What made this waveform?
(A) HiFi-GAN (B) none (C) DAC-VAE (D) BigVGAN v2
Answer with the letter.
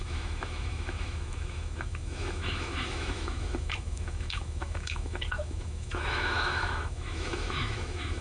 C